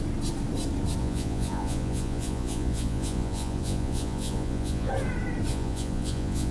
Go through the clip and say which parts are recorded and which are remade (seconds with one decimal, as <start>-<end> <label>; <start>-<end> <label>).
0.0-1.0 recorded; 1.0-4.9 remade; 4.9-5.5 recorded; 5.5-6.5 remade